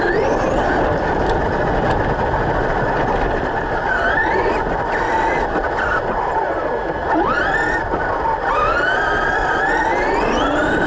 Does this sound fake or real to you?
real